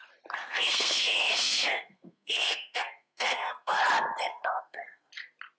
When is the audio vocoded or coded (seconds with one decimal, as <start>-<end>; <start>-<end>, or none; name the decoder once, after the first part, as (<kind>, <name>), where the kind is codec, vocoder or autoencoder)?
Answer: 0.4-3.8 (codec, SNAC); 4.3-5.1